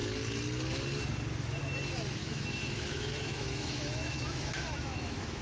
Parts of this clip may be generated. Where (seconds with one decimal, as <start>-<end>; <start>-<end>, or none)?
2.2-5.4